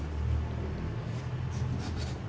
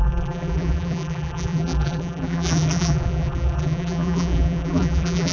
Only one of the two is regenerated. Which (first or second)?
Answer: second